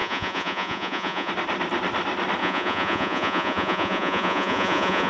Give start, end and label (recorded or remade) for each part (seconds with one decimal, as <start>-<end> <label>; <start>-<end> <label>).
0.0-1.3 remade; 1.3-2.4 recorded; 2.4-5.1 remade